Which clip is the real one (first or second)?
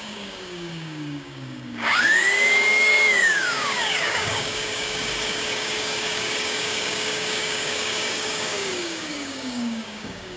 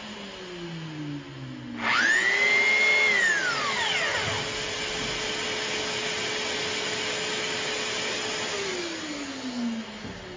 second